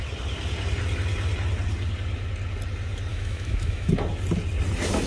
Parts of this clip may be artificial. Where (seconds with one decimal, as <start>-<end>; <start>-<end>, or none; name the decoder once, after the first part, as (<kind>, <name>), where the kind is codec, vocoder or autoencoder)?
3.1-3.9 (autoencoder, DAC-VAE)